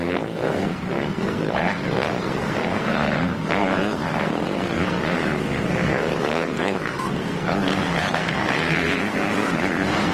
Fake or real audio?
fake